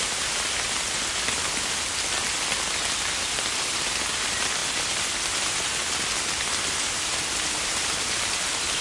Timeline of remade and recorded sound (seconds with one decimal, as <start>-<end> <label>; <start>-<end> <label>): 0.0-7.1 recorded; 7.1-7.9 remade; 7.9-8.8 recorded